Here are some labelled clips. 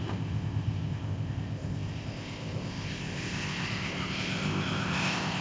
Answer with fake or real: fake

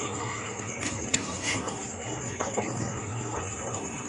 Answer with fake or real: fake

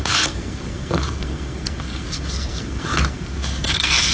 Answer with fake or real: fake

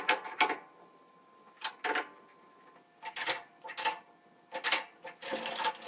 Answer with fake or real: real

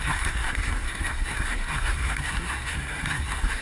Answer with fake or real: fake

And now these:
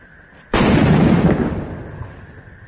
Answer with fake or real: real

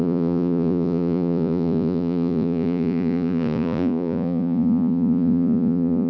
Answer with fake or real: fake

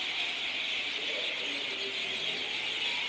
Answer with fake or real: real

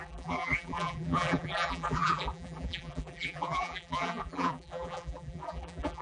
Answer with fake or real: fake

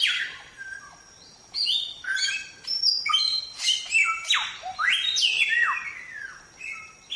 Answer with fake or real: real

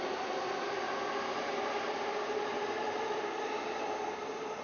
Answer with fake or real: real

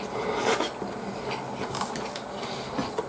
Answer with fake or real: real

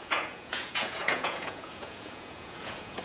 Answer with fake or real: fake